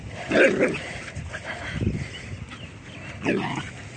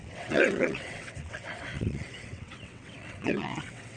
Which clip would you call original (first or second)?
first